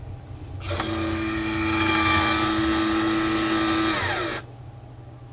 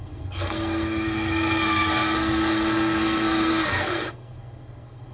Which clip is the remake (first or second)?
second